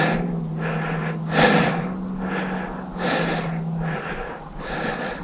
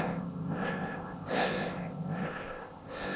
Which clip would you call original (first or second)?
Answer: first